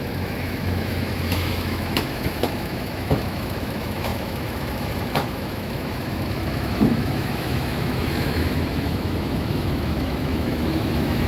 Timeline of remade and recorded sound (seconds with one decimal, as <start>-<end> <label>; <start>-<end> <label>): 0.0-11.3 remade